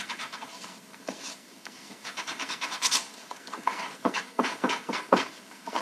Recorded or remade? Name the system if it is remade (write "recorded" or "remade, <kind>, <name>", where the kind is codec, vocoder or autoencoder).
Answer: remade, codec, SNAC